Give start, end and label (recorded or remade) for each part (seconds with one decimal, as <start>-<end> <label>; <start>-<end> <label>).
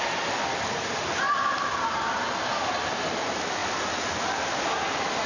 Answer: 0.0-5.3 recorded